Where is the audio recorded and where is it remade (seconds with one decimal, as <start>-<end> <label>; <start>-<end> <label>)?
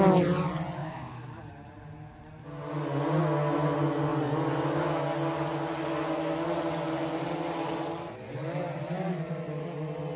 0.0-0.8 recorded; 0.8-1.4 remade; 1.4-10.2 recorded